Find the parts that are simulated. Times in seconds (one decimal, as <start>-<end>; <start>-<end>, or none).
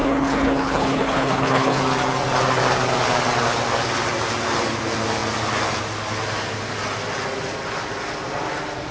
0.0-1.8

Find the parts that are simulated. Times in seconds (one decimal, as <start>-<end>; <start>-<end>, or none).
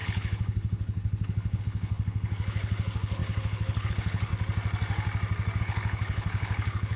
0.0-4.3; 5.6-7.0